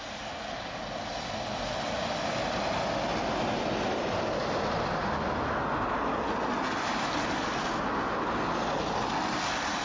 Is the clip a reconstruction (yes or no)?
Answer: no